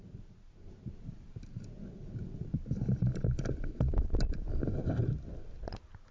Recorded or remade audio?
recorded